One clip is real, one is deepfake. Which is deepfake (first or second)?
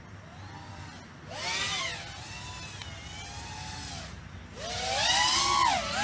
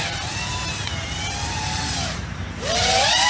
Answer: second